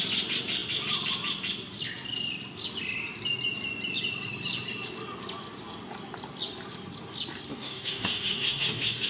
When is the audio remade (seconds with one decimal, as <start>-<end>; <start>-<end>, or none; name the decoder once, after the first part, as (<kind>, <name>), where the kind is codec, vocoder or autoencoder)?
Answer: 7.5-9.1 (codec, DAC)